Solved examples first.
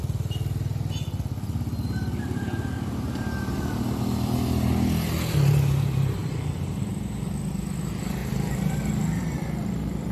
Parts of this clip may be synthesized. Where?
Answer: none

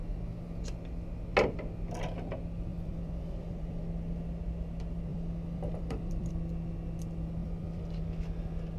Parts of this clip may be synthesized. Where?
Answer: 2.7-3.8 (vocoder, BigVGAN v2); 5.1-6.3; 7.4-8.0

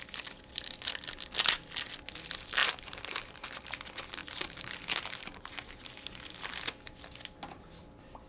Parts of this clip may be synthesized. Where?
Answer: 2.6-3.7 (vocoder, BigVGAN v2); 4.2-6.5

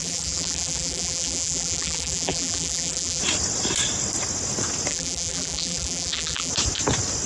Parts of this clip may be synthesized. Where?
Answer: 0.0-3.2 (vocoder, BigVGAN v2); 4.9-6.5

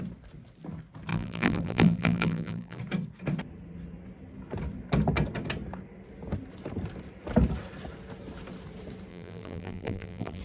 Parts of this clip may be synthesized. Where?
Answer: 1.1-2.8 (vocoder, BigVGAN v2); 9.1-10.4

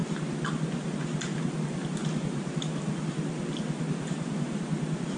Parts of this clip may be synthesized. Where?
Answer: none

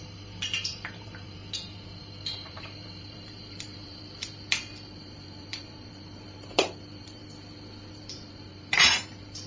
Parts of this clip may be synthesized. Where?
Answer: 0.0-1.4 (vocoder, BigVGAN v2); 2.0-7.2; 7.9-9.5